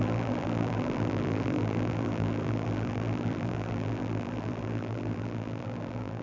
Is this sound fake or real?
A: fake